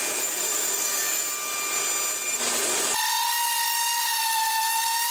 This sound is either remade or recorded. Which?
recorded